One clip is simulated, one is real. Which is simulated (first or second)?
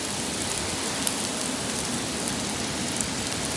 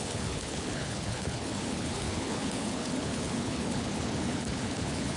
second